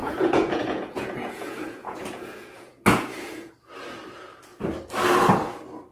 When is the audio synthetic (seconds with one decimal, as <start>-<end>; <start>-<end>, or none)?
0.0-3.5